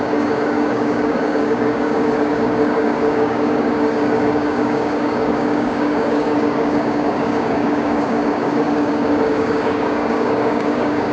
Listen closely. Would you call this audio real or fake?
fake